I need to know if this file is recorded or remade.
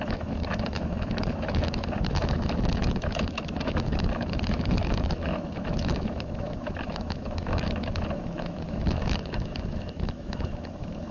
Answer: remade